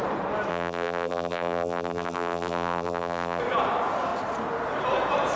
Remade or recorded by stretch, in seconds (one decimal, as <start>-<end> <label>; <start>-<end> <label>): 0.0-0.5 recorded; 0.5-3.4 remade; 3.4-5.4 recorded

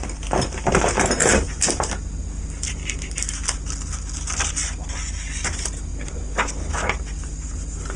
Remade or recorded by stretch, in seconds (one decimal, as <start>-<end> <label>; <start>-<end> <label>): 0.0-8.0 recorded

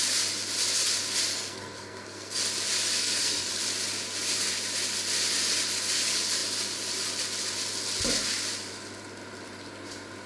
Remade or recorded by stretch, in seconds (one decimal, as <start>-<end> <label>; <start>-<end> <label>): 0.0-1.3 recorded; 1.3-2.4 remade; 2.4-3.0 recorded; 3.0-3.5 remade; 3.5-10.3 recorded

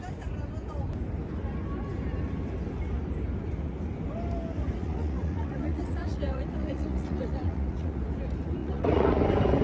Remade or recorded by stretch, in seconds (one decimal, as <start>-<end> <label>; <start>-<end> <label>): 0.0-4.8 recorded; 4.8-8.0 remade; 8.0-8.6 recorded; 8.6-9.2 remade; 9.2-9.6 recorded